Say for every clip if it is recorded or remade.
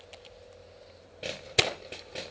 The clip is recorded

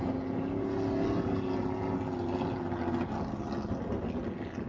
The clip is recorded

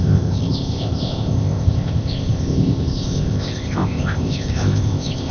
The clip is remade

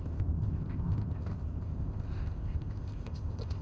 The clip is remade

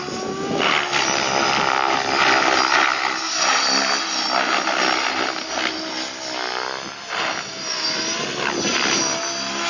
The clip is recorded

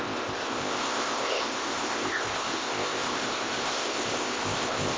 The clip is remade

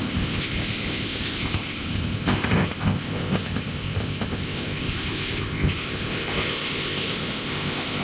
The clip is remade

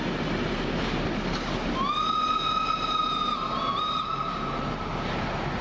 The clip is recorded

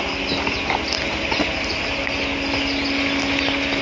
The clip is recorded